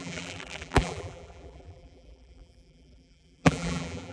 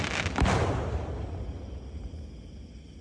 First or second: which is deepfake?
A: first